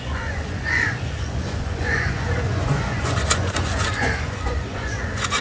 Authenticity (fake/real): fake